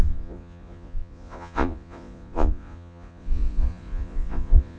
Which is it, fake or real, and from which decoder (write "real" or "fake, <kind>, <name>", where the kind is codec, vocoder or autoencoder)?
fake, vocoder, Vocos